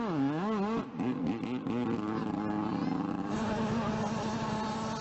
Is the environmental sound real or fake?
real